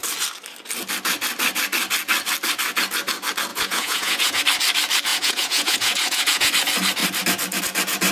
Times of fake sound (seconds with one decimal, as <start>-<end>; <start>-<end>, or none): 3.5-4.4; 5.1-6.5